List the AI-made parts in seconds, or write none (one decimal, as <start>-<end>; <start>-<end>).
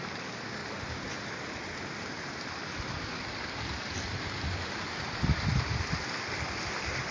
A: none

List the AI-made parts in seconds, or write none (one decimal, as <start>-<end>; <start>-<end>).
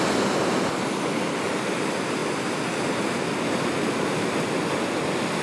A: none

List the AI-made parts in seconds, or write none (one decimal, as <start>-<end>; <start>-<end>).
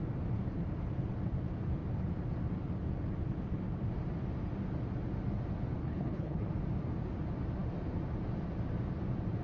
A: 5.8-6.5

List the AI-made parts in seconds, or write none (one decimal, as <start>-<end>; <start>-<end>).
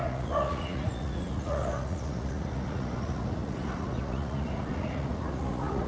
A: 0.0-5.9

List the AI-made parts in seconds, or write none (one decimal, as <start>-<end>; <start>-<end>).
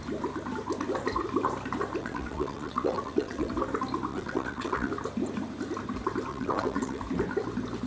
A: 2.0-3.5; 4.1-4.9; 6.3-7.0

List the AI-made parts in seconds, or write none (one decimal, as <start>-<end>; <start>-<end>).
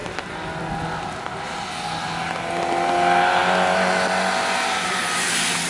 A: none